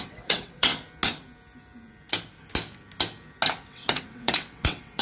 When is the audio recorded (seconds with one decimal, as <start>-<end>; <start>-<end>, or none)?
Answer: 0.7-3.7